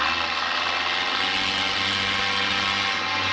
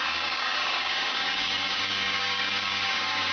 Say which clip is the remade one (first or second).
second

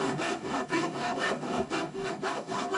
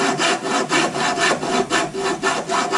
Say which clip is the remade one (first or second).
first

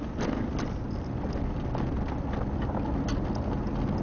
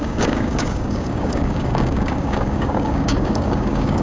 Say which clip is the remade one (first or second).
second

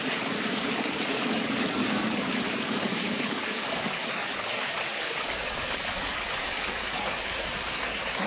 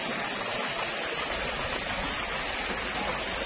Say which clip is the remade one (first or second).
first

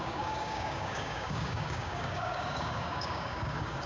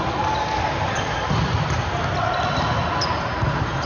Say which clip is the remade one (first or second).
first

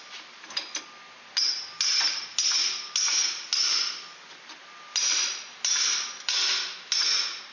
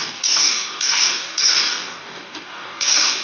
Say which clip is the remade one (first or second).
second